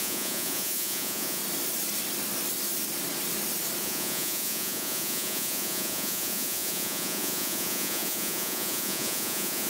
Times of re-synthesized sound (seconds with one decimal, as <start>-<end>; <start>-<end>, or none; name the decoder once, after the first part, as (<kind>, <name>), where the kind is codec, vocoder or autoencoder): 0.0-1.4 (vocoder, Vocos); 3.8-9.7